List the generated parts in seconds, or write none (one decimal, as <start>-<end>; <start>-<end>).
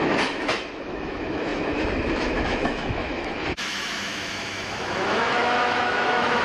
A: 0.0-6.4